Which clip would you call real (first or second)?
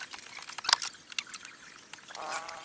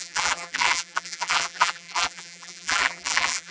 first